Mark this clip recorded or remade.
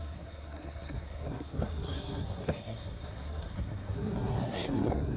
remade